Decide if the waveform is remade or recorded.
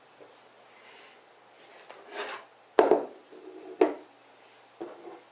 recorded